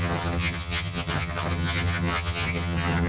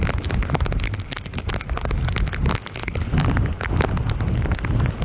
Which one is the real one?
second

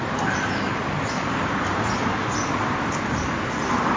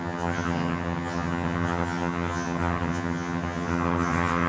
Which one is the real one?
first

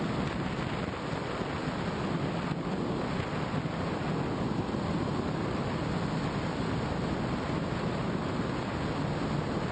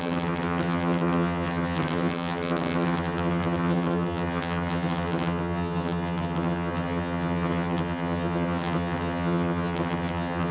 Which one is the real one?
first